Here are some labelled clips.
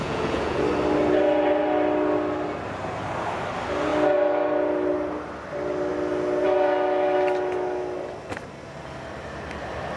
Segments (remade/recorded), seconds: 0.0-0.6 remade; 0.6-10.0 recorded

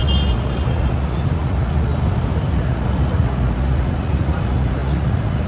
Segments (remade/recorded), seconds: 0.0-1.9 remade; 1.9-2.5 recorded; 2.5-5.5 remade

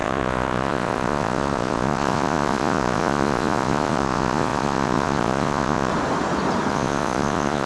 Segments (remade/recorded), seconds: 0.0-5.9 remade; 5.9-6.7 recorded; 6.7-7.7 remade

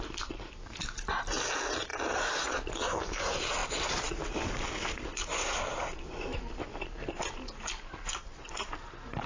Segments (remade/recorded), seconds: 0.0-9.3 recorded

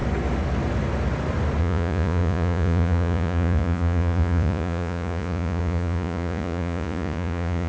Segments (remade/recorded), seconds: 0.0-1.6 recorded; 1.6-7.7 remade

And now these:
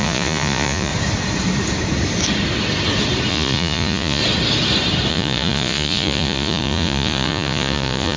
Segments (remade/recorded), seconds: 0.0-0.9 remade; 0.9-3.3 recorded; 3.3-4.2 remade; 4.2-5.1 recorded; 5.1-8.2 remade